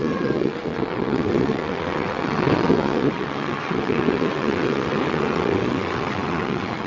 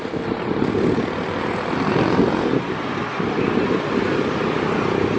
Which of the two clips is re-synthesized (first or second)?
first